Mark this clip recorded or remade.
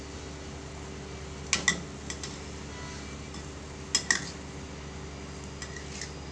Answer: recorded